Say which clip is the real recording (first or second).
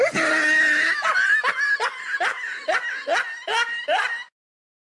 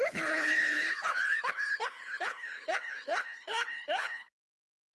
first